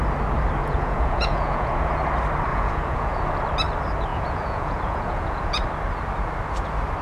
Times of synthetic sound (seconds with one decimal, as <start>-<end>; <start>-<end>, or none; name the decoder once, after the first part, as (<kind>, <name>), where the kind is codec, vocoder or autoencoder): 0.6-1.9 (vocoder, Vocos); 2.5-3.2; 4.1-5.6